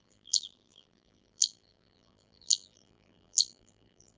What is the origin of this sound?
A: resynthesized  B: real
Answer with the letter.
A